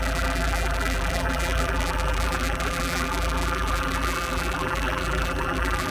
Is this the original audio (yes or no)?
no